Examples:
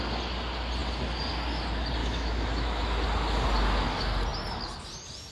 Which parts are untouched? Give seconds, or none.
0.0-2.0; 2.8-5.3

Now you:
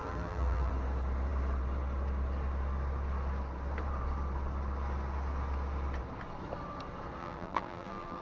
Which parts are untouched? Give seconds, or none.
0.7-7.2

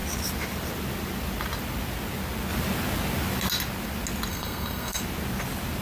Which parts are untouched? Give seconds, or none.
0.0-4.3; 5.0-5.8